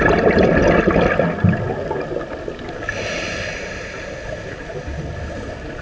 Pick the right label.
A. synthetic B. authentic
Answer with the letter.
B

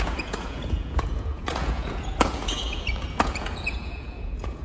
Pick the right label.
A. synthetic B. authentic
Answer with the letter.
A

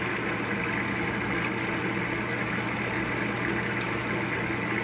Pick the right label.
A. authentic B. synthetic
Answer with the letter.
A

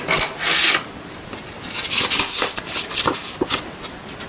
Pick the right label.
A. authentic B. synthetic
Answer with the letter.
A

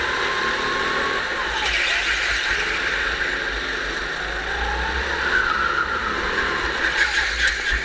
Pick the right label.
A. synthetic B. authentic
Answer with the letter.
B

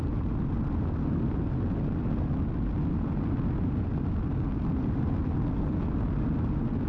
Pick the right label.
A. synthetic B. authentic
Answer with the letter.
B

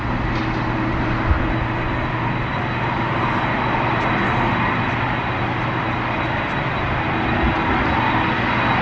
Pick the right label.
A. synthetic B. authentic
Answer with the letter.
B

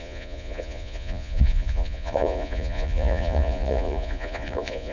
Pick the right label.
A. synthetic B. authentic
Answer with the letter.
A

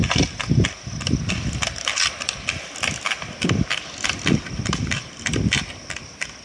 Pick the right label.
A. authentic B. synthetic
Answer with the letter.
A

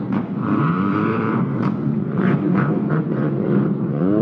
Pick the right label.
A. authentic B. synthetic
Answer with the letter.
B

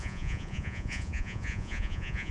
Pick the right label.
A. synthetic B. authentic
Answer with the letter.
A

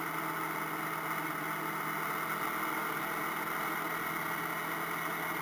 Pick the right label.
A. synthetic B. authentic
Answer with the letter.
B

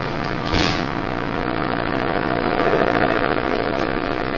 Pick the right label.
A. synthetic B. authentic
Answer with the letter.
A